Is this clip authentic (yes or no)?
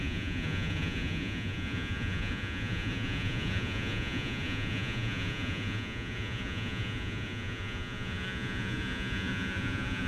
no